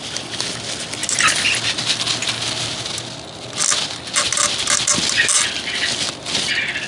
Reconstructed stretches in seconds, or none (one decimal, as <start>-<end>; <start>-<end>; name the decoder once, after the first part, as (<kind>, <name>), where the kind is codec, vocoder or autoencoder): none